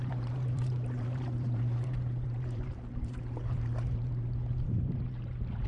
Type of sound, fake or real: fake